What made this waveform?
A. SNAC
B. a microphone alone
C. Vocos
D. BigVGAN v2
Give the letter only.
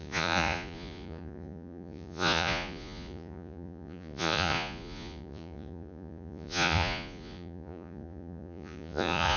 C